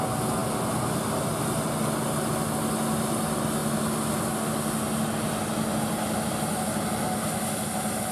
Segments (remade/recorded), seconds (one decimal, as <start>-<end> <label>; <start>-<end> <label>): 0.0-8.1 recorded